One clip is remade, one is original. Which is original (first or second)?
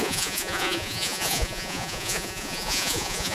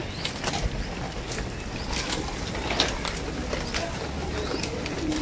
second